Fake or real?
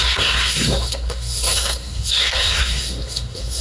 fake